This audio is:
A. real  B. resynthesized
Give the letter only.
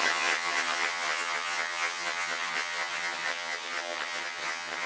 B